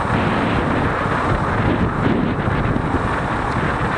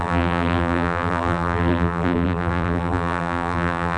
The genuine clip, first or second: first